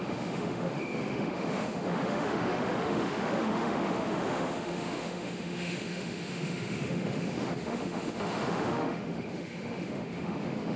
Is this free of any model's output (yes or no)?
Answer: no